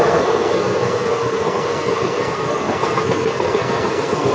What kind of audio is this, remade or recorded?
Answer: remade